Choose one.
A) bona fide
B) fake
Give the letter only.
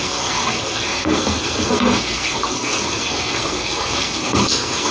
B